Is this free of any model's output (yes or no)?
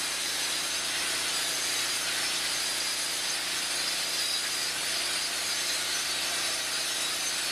yes